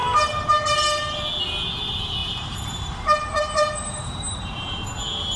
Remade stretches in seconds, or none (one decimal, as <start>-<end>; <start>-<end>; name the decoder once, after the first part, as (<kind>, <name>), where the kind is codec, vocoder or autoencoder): 0.0-0.5 (vocoder, BigVGAN v2); 2.2-3.3; 3.8-4.5